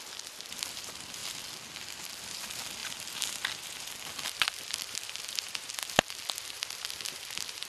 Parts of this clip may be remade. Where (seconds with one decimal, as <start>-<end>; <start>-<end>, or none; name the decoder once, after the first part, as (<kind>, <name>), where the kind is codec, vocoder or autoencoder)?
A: 0.0-1.2 (vocoder, BigVGAN v2); 2.1-2.8; 4.4-5.8; 6.5-7.7

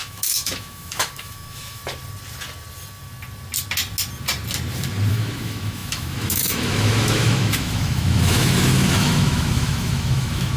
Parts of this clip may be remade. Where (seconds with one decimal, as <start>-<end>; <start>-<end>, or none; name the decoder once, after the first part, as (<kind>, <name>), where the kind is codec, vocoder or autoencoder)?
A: 0.0-1.8 (autoencoder, DAC-VAE); 5.1-10.6

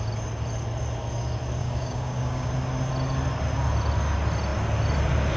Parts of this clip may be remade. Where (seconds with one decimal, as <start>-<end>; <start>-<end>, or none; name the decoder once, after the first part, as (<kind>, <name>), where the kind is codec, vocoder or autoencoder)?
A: 1.6-2.5 (codec, DAC)

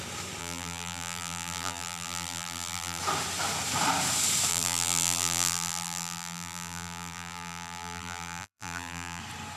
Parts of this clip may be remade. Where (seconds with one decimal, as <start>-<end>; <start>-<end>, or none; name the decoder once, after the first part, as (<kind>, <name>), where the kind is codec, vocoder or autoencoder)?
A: 0.4-3.0 (vocoder, BigVGAN v2); 4.5-9.2

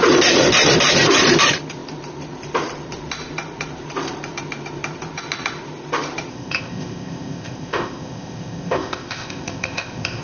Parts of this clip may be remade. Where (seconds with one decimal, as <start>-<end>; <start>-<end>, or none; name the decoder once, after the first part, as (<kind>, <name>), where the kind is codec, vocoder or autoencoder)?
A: 6.3-10.2 (codec, ZipCodec)

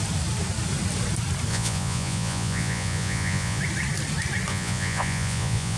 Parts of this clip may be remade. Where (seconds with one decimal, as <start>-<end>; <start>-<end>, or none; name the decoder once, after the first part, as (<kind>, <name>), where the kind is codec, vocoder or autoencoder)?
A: 1.5-3.6 (vocoder, Vocos); 4.5-5.8

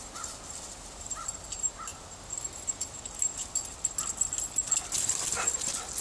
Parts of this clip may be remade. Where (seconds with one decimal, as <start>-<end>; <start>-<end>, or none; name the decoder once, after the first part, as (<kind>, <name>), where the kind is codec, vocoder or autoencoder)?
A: none

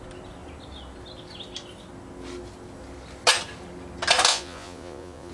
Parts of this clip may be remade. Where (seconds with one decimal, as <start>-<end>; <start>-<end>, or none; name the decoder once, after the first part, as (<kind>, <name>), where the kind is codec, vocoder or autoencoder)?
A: 4.3-5.3 (vocoder, Vocos)